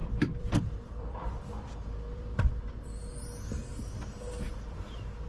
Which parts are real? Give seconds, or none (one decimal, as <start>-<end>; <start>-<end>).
3.2-5.3

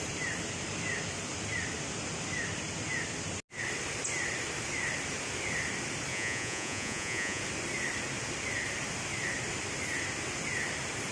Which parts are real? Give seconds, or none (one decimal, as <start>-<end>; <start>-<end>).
0.0-6.1; 7.4-11.1

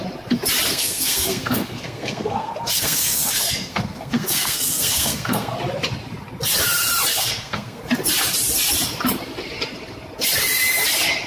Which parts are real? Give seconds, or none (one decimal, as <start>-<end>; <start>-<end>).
0.0-0.7; 5.5-7.1; 7.8-11.3

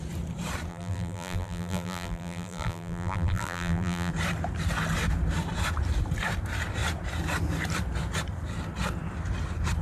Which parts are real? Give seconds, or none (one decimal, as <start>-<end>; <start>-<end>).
0.0-0.7; 4.1-9.8

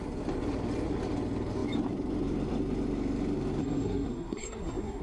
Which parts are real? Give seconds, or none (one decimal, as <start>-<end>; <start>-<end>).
0.0-3.6

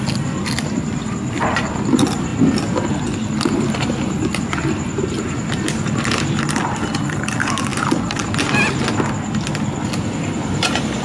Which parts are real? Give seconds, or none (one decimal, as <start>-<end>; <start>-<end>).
2.3-2.9; 7.7-9.8

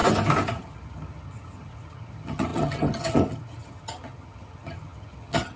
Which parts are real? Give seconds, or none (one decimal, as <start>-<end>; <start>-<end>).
0.0-0.5